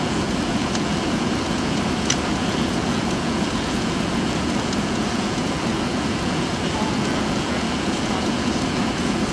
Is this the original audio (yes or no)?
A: no